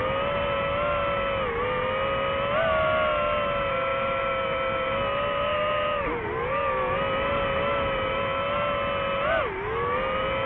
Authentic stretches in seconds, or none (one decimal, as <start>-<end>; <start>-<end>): 0.0-10.5